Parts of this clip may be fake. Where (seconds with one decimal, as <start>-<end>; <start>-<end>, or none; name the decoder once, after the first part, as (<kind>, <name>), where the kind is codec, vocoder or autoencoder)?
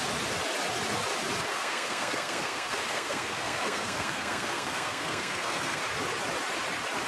1.5-5.8 (codec, SNAC)